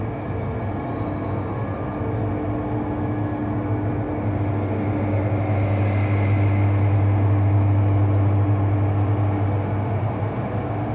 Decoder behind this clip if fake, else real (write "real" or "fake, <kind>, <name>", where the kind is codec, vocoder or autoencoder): real